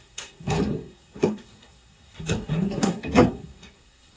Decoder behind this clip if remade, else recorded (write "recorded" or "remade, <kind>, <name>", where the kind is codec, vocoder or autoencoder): remade, codec, SNAC